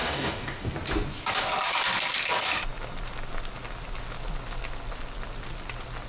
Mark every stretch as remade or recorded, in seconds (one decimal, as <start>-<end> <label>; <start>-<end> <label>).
0.0-0.7 remade; 0.7-6.1 recorded